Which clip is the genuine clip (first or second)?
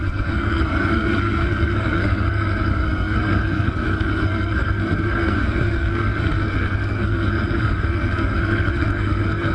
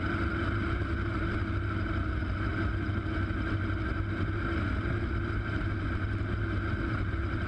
second